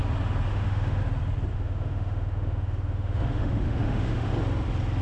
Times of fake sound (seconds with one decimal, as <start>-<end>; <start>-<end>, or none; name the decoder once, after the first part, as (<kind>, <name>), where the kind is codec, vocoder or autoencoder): 0.5-1.0 (autoencoder, DAC-VAE); 1.5-4.3